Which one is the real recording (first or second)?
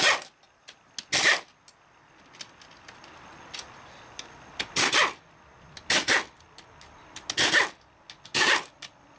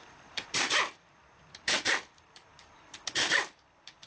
first